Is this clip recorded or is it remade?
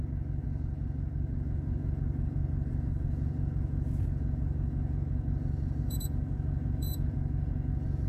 remade